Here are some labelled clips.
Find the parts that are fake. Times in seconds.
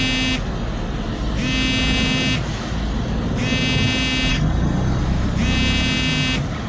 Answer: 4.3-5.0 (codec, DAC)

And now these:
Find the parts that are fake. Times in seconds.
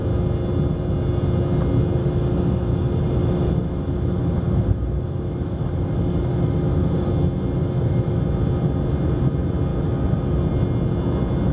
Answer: 2.0-7.1 (autoencoder, DAC-VAE); 7.6-8.2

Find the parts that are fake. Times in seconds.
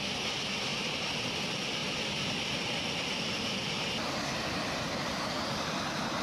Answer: none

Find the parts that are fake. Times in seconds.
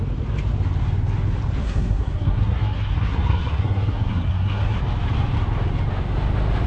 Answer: 1.6-4.8 (codec, SNAC)